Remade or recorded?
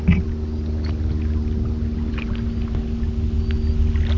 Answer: recorded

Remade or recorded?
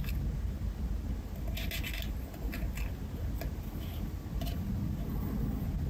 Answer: recorded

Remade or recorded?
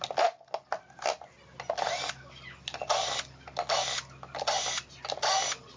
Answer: recorded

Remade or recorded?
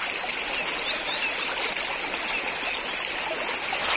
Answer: recorded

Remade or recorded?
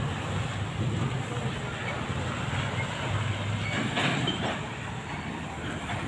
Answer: recorded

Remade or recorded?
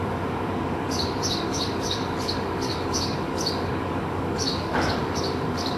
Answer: remade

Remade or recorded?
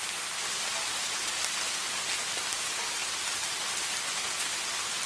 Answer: recorded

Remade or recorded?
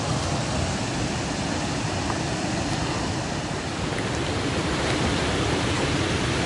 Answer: recorded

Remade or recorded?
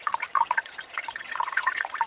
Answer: remade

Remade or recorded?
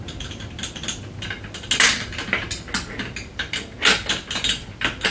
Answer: recorded